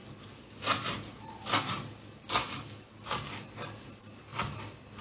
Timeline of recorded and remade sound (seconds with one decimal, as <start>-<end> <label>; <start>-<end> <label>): 0.0-2.4 recorded; 2.4-2.9 remade; 2.9-5.0 recorded